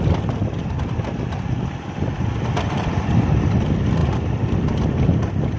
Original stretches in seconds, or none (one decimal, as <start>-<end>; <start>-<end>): 0.0-5.6